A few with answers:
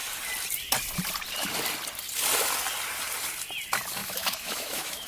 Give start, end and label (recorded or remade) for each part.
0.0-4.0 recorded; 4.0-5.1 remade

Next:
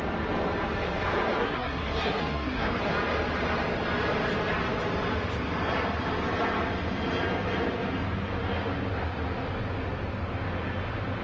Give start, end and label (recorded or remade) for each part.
0.0-1.4 recorded; 1.4-2.8 remade; 2.8-11.2 recorded

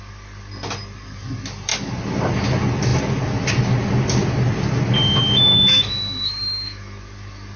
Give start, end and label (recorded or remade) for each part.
0.0-5.5 recorded; 5.5-7.0 remade; 7.0-7.6 recorded

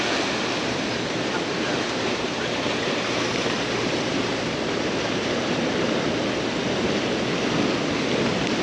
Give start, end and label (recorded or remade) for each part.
0.0-0.6 recorded; 0.6-5.7 remade; 5.7-8.6 recorded

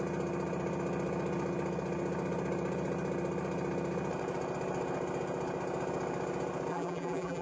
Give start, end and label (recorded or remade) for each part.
0.0-6.7 recorded; 6.7-7.4 remade